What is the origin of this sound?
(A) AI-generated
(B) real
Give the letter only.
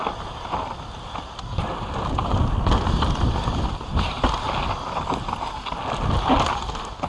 B